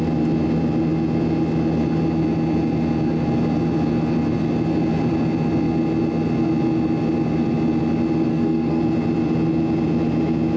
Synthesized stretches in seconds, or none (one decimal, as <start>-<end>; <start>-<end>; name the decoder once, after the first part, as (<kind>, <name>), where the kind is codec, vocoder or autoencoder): 8.3-8.8 (codec, SNAC)